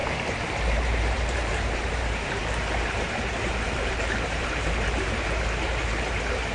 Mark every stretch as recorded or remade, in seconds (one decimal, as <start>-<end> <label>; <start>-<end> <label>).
0.0-0.6 recorded; 0.6-2.4 remade; 2.4-3.3 recorded; 3.3-6.5 remade